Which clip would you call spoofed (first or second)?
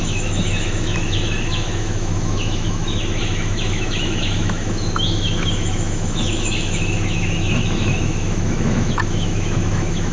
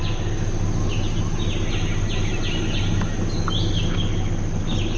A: first